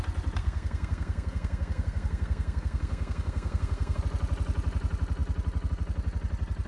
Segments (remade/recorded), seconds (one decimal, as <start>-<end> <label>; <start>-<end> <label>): 0.0-0.4 recorded; 0.4-4.0 remade; 4.0-6.7 recorded